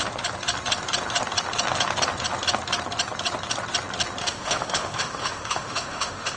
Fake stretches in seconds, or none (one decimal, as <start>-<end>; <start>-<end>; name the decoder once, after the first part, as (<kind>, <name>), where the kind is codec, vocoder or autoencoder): 4.2-6.4 (autoencoder, DAC-VAE)